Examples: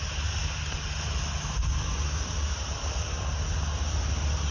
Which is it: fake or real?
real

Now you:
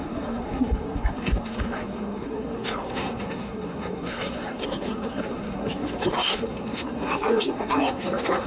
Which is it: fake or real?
fake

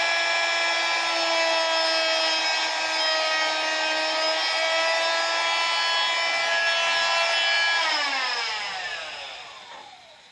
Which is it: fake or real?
real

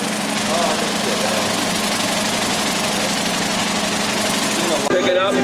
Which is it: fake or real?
real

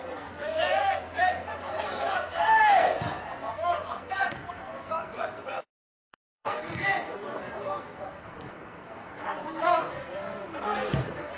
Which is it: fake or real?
fake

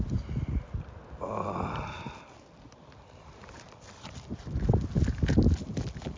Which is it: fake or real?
real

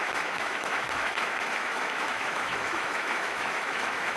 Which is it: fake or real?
fake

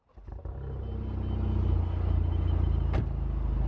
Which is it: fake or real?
real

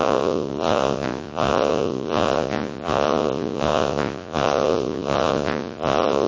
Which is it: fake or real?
fake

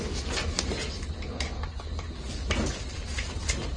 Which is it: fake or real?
real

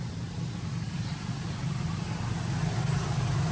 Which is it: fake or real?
real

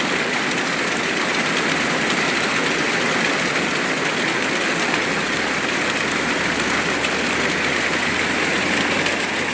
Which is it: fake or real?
real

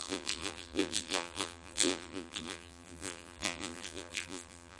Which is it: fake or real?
fake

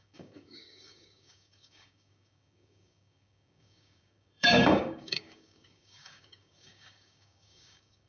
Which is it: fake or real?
fake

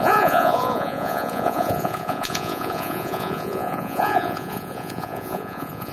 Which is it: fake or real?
fake